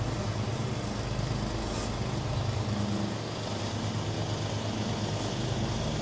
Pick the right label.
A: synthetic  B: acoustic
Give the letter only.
B